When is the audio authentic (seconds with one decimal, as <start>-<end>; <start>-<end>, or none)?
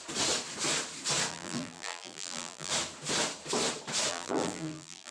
0.0-1.3; 2.7-4.1